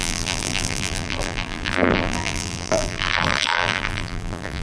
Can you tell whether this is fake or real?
fake